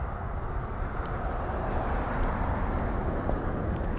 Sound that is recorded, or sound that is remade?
recorded